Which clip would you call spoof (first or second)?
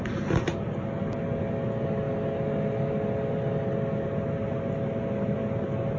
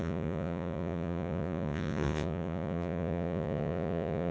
second